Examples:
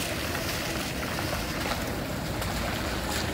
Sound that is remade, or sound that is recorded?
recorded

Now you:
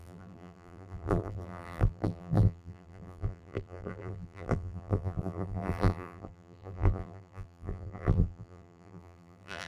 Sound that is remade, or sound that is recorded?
remade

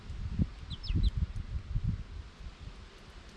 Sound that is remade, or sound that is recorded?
recorded